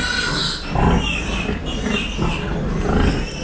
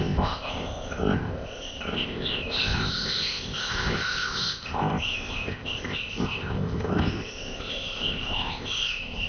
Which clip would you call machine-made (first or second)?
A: second